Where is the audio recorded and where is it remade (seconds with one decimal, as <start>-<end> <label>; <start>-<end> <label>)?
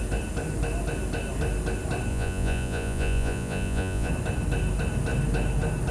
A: 0.0-2.1 recorded; 2.1-4.1 remade; 4.1-5.9 recorded